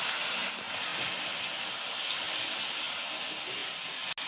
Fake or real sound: real